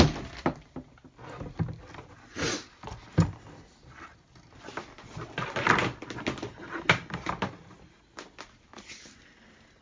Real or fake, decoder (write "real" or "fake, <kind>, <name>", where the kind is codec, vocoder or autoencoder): real